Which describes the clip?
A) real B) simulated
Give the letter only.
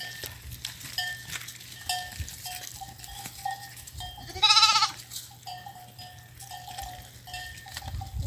A